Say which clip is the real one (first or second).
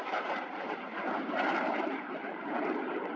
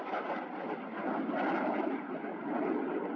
second